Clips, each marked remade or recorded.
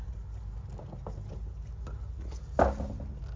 recorded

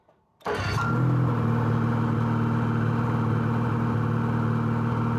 recorded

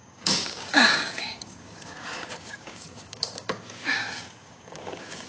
remade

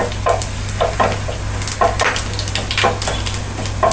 recorded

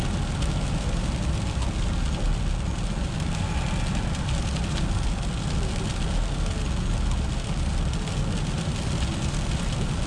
recorded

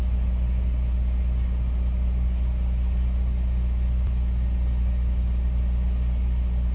recorded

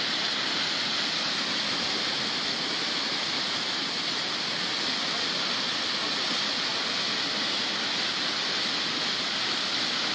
recorded